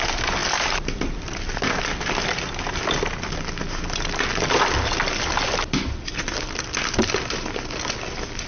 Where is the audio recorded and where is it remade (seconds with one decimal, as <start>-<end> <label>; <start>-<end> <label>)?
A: 0.0-0.4 recorded; 0.4-2.1 remade; 2.1-8.5 recorded